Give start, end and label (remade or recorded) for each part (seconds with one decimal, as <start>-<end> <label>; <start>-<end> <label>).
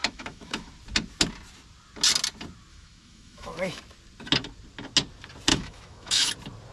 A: 0.0-0.7 remade; 0.7-2.7 recorded; 2.7-3.8 remade; 3.8-5.5 recorded; 5.5-6.3 remade; 6.3-6.7 recorded